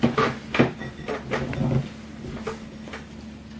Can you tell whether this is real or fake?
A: real